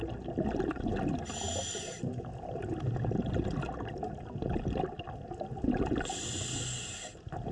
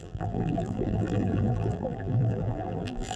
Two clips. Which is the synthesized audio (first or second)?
second